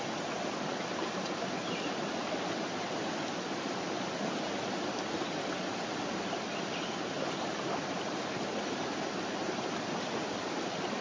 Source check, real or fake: real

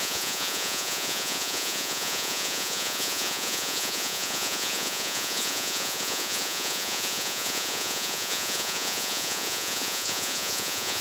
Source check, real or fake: fake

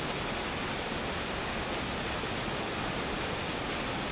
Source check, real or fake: real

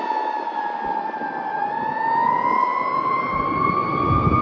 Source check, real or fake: real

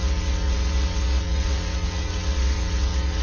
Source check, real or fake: fake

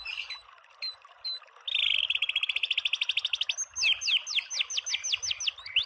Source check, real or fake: real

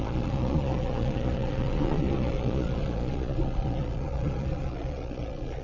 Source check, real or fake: fake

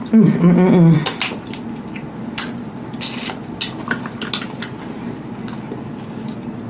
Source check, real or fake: real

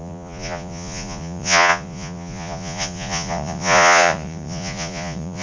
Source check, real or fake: fake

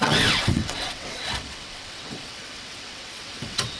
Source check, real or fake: fake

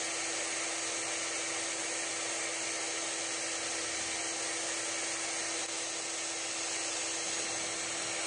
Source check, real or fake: real